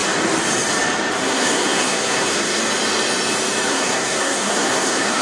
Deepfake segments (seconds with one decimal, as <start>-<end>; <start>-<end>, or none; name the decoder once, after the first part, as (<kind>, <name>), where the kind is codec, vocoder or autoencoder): 1.2-2.6 (codec, SNAC); 3.7-5.2